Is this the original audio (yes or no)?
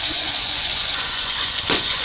no